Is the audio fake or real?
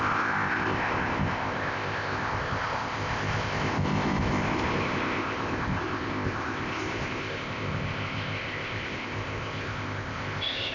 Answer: fake